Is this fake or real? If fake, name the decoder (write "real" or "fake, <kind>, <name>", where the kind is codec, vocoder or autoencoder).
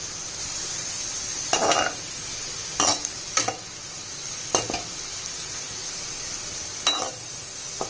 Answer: real